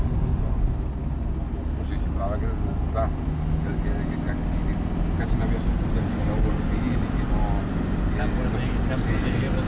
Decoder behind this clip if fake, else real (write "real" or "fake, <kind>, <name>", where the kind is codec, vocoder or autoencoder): real